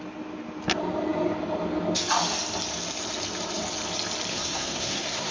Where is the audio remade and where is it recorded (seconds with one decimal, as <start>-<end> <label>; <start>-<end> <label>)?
0.0-4.3 recorded; 4.3-5.3 remade